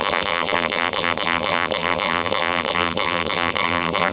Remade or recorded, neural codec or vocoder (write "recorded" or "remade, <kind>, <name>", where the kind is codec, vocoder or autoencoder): remade, vocoder, BigVGAN v2